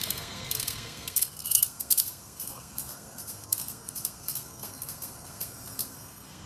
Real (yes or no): no